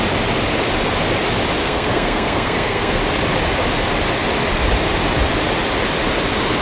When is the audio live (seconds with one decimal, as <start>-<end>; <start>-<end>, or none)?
0.0-1.6; 3.0-6.6